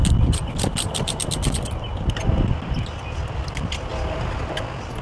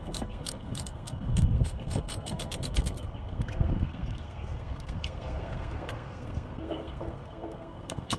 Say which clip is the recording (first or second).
first